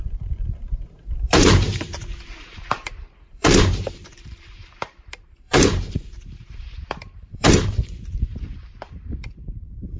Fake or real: fake